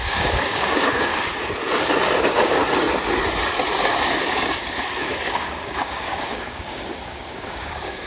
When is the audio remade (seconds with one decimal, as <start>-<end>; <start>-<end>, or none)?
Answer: 0.0-1.1; 1.8-2.6; 3.8-8.1